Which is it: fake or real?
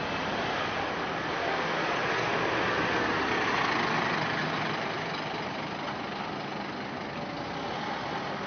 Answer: real